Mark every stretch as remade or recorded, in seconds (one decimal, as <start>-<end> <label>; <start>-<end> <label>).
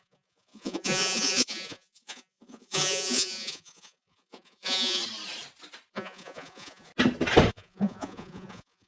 0.0-5.0 remade; 5.0-5.9 recorded; 5.9-6.9 remade; 6.9-7.5 recorded; 7.5-8.9 remade